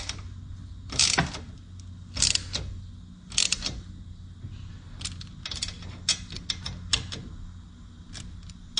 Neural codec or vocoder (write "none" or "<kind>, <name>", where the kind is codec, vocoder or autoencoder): none